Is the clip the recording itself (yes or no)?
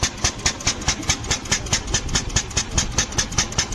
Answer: no